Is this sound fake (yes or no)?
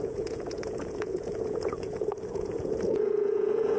yes